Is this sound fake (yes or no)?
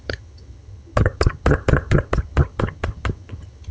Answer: yes